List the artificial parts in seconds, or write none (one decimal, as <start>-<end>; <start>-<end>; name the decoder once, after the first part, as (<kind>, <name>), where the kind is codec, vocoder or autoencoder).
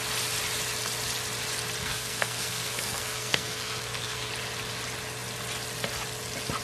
1.8-4.3 (codec, SNAC)